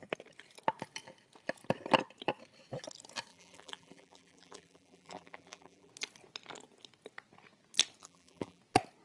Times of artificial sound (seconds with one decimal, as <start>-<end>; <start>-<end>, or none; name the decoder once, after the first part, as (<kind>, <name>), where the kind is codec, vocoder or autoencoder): 3.3-5.9 (vocoder, BigVGAN v2); 8.0-8.6